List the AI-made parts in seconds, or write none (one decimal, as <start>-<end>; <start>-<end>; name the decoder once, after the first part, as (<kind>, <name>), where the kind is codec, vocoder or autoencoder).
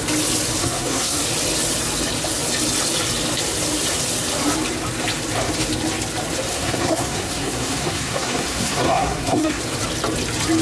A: 0.6-1.2 (codec, SNAC); 6.5-9.6